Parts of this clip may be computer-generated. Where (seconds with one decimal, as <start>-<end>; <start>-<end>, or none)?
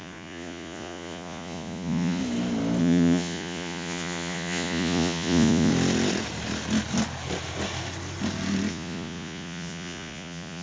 0.0-2.2; 2.8-5.7; 8.7-10.6